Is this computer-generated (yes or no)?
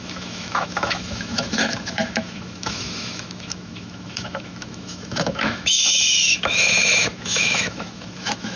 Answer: yes